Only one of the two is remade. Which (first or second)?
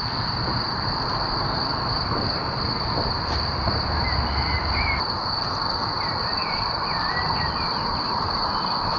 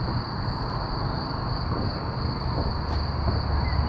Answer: first